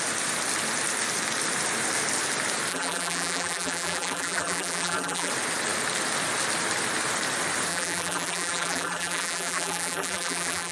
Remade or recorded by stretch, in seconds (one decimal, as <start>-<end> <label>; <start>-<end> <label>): 0.0-2.7 recorded; 2.7-5.3 remade; 5.3-7.7 recorded; 7.7-10.7 remade